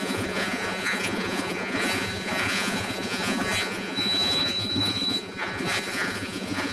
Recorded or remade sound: remade